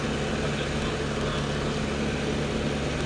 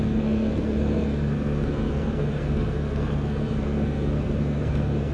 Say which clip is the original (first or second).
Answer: first